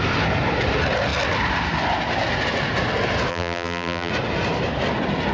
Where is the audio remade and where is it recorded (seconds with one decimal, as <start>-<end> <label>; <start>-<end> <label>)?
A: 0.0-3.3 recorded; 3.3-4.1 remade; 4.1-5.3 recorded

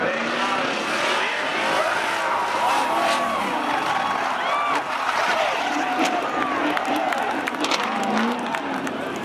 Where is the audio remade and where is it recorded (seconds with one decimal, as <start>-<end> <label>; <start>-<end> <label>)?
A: 0.0-9.2 recorded

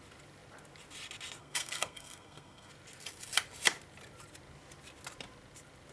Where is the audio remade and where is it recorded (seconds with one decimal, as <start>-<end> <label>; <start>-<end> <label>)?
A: 0.0-1.4 recorded; 1.4-2.7 remade; 2.7-5.9 recorded

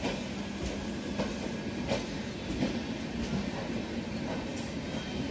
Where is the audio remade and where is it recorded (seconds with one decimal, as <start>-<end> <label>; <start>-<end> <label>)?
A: 0.0-5.3 recorded

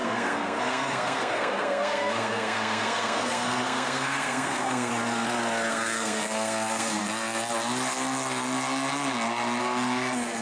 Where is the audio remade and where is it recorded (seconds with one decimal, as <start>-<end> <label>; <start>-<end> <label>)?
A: 0.0-4.9 remade; 4.9-5.7 recorded; 5.7-7.0 remade; 7.0-9.6 recorded; 9.6-10.4 remade

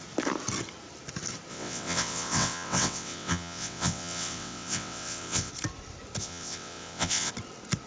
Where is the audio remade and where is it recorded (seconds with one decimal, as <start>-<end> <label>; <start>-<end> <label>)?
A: 0.0-1.5 recorded; 1.5-5.5 remade; 5.5-6.2 recorded; 6.2-7.3 remade; 7.3-7.9 recorded